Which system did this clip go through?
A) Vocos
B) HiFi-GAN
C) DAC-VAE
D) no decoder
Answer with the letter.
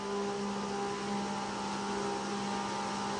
D